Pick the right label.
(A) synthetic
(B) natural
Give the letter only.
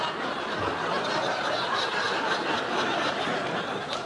B